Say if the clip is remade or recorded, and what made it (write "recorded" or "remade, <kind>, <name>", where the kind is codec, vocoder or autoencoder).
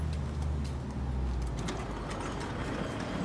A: recorded